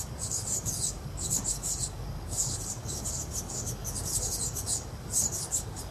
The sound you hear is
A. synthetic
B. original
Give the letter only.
A